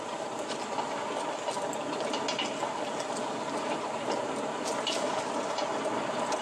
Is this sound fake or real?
real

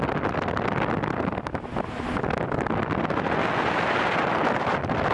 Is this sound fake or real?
real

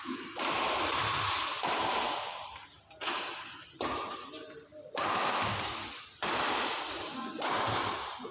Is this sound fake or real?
real